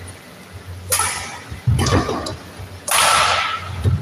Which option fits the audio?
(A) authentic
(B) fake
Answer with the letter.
A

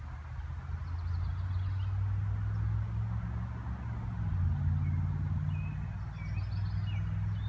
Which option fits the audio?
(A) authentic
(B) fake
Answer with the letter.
A